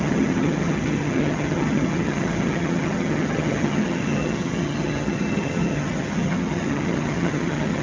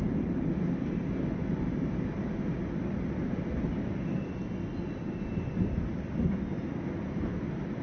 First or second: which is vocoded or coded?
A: first